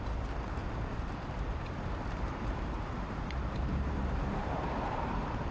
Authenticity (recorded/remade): remade